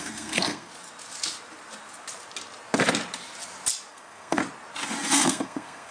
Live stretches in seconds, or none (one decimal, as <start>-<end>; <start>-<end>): 0.7-3.9; 4.4-5.1